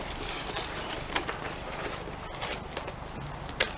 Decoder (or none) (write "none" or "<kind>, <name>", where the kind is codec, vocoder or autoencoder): none